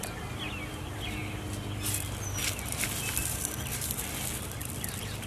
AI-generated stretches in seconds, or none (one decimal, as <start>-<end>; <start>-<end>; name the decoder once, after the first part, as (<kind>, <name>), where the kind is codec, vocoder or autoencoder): none